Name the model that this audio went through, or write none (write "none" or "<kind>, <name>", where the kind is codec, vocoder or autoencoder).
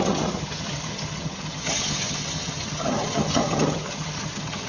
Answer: vocoder, HiFi-GAN